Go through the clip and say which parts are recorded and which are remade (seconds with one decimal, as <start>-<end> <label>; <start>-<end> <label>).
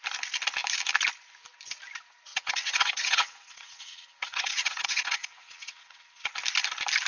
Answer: 0.0-2.3 recorded; 2.3-6.3 remade; 6.3-7.1 recorded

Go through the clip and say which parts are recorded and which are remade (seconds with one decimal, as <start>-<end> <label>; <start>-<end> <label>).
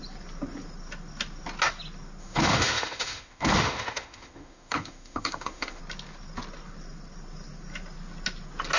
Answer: 0.0-2.2 recorded; 2.2-5.8 remade; 5.8-8.8 recorded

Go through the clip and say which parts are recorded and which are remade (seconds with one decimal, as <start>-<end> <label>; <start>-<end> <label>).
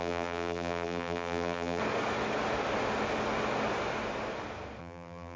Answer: 0.0-1.8 remade; 1.8-4.8 recorded; 4.8-5.4 remade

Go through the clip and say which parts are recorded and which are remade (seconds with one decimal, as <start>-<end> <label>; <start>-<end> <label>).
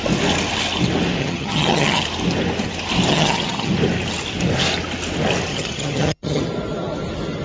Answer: 0.0-1.2 recorded; 1.2-2.0 remade; 2.0-3.1 recorded; 3.1-3.7 remade; 3.7-5.5 recorded; 5.5-6.4 remade; 6.4-7.4 recorded